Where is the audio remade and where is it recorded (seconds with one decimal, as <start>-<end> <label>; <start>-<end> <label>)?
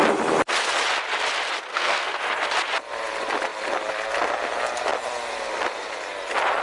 0.0-1.7 recorded; 1.7-2.2 remade; 2.2-6.6 recorded